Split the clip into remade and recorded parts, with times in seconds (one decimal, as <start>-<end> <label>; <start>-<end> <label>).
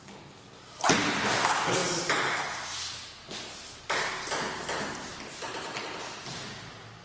0.0-7.0 recorded